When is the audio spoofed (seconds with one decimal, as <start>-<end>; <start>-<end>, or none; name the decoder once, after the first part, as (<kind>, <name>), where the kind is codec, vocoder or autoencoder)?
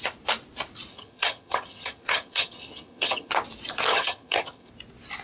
0.9-3.3 (vocoder, HiFi-GAN); 3.9-4.7